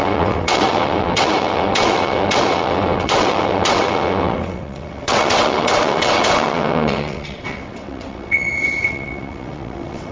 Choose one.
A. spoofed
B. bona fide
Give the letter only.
A